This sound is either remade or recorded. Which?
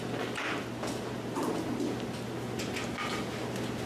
recorded